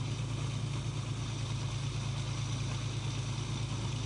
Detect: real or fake real